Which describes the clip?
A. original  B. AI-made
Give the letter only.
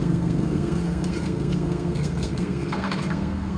B